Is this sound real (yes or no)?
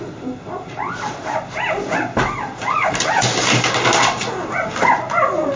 yes